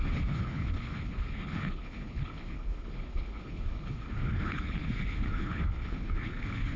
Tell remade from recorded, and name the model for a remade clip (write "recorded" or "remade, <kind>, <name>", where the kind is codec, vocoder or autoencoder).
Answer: remade, codec, HILCodec